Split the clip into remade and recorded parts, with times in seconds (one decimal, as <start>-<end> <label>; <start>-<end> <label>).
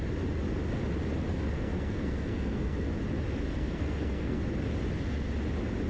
0.0-1.3 recorded; 1.3-2.9 remade; 2.9-3.5 recorded; 3.5-4.4 remade; 4.4-5.9 recorded